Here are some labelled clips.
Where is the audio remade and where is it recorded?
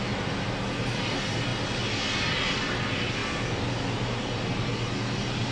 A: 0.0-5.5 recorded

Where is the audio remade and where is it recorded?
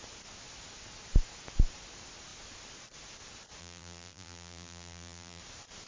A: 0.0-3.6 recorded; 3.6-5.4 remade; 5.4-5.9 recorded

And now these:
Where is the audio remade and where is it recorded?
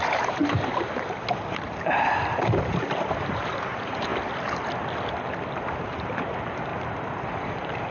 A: 0.0-0.4 remade; 0.4-3.0 recorded; 3.0-4.1 remade; 4.1-5.9 recorded; 5.9-7.9 remade